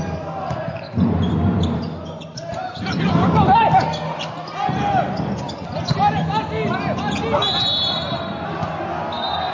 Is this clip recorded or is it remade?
recorded